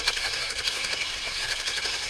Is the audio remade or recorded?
remade